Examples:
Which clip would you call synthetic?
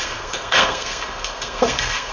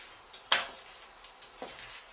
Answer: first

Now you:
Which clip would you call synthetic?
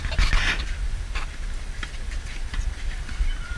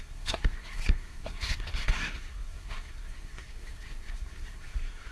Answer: second